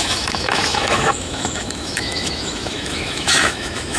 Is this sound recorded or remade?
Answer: remade